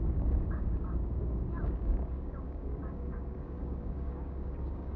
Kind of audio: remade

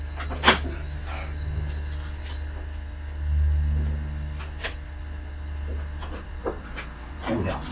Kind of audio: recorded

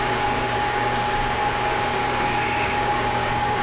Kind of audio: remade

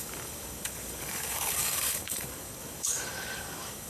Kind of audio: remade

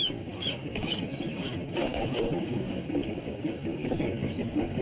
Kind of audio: remade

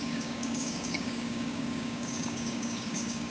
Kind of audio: remade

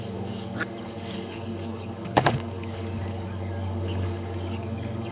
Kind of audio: remade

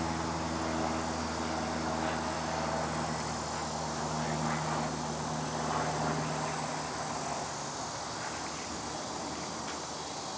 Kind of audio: recorded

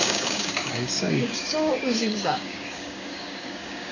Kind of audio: remade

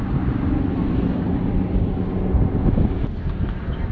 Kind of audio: recorded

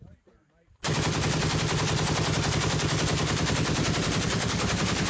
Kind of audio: recorded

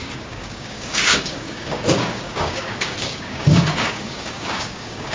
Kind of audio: remade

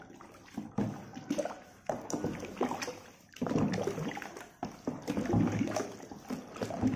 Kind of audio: recorded